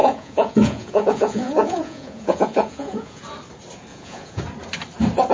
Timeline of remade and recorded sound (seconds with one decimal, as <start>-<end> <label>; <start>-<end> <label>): 0.0-3.2 remade; 3.2-3.9 recorded; 3.9-4.4 remade; 4.4-5.3 recorded